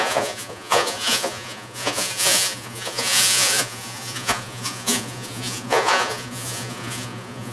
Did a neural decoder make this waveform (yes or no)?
yes